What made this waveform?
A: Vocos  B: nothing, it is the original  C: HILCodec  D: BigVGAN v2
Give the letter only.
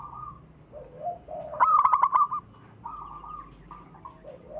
B